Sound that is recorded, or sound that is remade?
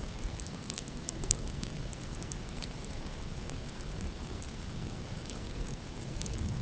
remade